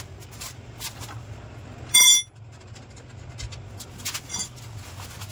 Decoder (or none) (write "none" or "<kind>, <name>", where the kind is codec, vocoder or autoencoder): none